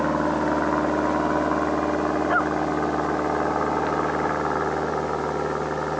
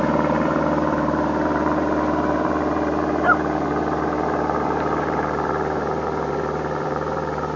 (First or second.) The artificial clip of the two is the second